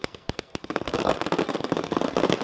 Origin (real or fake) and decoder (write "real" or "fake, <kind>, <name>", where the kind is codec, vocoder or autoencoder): fake, codec, SNAC